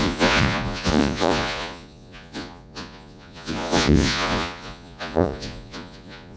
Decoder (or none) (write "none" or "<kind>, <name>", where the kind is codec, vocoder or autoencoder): vocoder, Vocos